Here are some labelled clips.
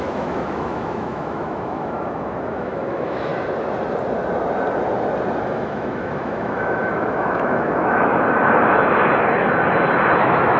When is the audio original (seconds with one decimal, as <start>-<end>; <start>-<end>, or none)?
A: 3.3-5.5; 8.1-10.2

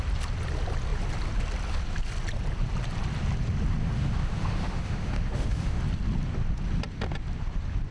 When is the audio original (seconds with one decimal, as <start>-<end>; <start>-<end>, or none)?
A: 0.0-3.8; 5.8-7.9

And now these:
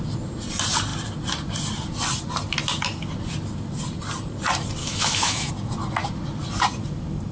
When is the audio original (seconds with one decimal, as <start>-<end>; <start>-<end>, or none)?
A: 0.0-4.8; 5.5-7.3

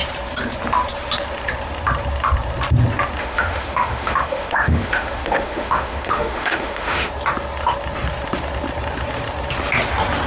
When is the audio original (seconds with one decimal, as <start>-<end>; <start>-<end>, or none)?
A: 0.0-3.2; 7.1-10.3

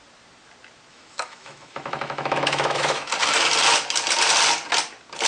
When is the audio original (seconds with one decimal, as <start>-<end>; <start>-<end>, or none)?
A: 0.0-0.9; 3.1-5.3

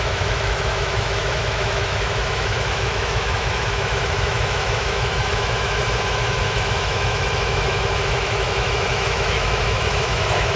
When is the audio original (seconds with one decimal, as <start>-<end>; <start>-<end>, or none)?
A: none

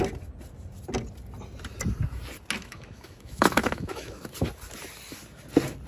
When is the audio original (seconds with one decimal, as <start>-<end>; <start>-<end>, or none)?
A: 0.0-2.6; 4.2-5.9

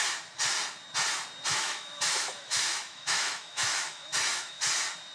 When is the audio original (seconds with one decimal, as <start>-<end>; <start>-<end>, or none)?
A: 0.0-1.5; 4.6-5.1